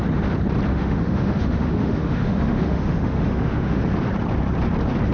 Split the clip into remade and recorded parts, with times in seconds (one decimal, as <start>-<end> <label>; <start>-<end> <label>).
0.0-0.7 recorded; 0.7-3.8 remade; 3.8-5.1 recorded